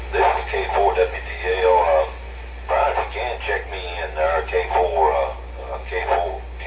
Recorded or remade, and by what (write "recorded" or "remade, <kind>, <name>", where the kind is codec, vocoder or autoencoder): recorded